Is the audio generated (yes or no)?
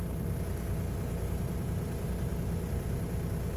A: no